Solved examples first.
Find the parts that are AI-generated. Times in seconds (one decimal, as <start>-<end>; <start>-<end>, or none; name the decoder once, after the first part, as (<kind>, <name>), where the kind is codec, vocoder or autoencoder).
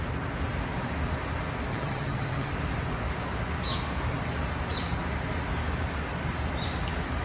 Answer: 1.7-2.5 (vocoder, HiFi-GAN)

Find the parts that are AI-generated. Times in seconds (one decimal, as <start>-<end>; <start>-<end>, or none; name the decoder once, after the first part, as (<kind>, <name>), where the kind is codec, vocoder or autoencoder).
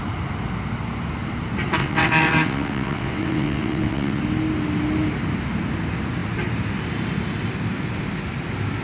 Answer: 1.8-4.2 (vocoder, WaveNeXt)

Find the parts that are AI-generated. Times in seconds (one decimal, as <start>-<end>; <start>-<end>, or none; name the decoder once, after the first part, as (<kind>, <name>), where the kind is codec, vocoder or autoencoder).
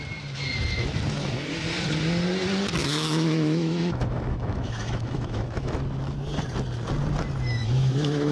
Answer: 2.8-5.8 (autoencoder, DAC-VAE); 7.6-8.3